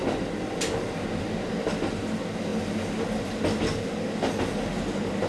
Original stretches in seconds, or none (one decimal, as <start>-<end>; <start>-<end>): 0.0-5.3